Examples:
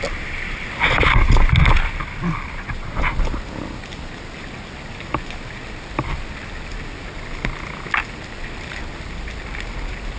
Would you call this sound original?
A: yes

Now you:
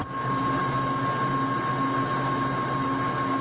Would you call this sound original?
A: yes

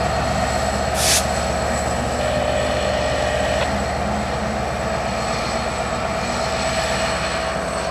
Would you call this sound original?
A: yes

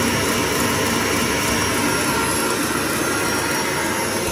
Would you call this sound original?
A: yes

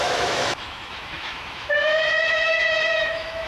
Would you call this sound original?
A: no